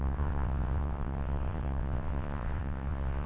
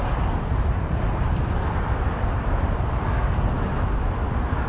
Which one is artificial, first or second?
first